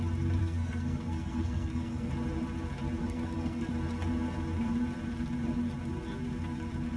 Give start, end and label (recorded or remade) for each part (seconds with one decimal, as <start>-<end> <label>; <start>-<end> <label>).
0.0-0.4 recorded; 0.4-2.1 remade; 2.1-3.0 recorded; 3.0-3.7 remade; 3.7-7.0 recorded